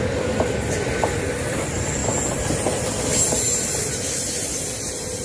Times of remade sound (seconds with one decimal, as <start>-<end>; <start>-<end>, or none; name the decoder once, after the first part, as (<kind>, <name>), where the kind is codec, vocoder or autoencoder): none